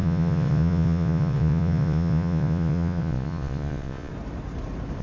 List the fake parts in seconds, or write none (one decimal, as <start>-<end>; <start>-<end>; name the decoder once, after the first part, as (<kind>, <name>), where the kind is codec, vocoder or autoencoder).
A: 0.0-4.1 (vocoder, Vocos)